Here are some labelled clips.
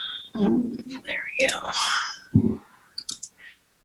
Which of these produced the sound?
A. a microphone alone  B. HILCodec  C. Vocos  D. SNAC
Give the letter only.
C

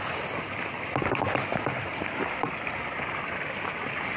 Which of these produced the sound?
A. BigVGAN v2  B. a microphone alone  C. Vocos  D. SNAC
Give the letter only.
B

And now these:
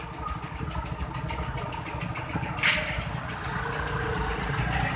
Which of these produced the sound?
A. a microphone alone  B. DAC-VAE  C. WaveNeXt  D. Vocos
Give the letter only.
A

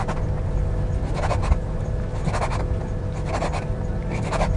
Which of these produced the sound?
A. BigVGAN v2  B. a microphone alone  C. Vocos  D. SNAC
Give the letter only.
B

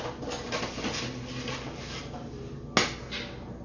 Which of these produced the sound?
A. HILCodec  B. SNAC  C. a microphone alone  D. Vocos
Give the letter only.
C